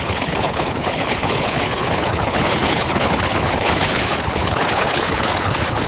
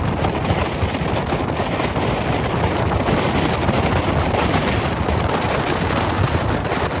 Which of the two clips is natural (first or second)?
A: second